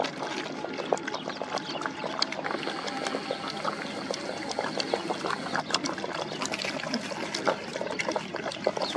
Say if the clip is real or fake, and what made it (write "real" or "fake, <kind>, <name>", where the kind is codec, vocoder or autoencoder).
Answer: real